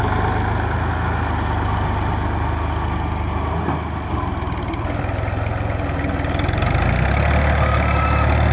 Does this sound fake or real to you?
real